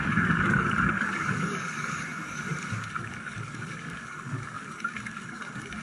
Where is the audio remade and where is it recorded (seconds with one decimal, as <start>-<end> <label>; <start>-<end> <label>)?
0.0-5.8 remade

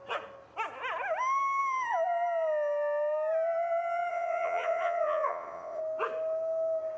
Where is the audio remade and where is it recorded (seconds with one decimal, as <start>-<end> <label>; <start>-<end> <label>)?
0.0-4.1 recorded; 4.1-5.8 remade; 5.8-7.0 recorded